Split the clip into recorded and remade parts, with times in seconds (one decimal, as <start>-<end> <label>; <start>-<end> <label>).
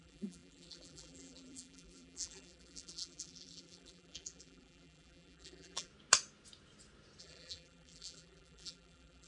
0.0-5.9 remade; 5.9-7.2 recorded; 7.2-9.3 remade